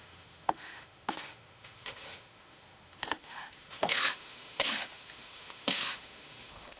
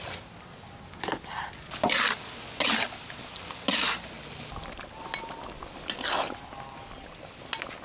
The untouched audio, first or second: second